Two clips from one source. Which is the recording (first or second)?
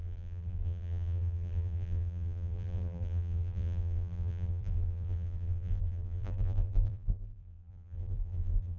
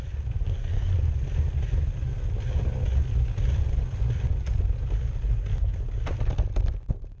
second